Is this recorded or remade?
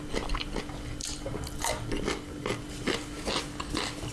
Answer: recorded